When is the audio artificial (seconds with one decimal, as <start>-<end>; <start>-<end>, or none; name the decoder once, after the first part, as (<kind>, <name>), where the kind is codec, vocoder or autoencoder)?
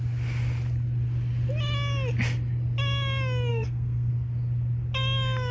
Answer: 3.5-4.1 (codec, SNAC)